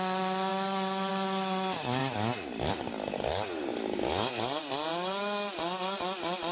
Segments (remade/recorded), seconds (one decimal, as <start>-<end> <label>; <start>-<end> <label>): 0.0-6.5 recorded